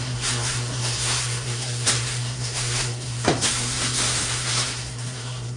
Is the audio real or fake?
fake